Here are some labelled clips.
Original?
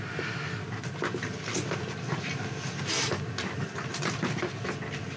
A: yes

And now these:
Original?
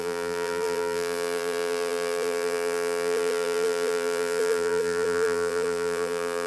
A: no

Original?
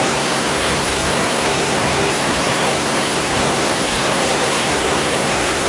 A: no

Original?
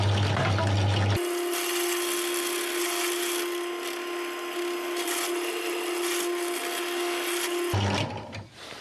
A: yes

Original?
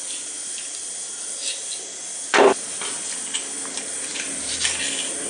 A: yes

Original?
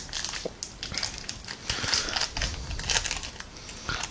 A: yes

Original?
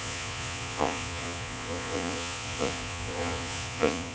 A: no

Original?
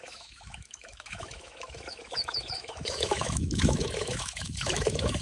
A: no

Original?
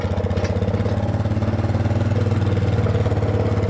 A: yes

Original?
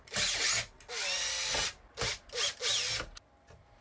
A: yes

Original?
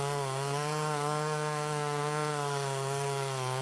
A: no